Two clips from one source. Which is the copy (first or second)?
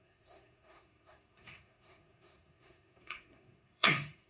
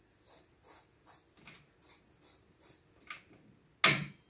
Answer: first